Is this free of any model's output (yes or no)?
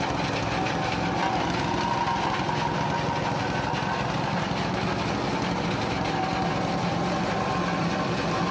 yes